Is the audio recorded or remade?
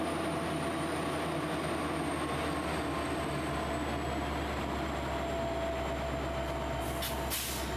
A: recorded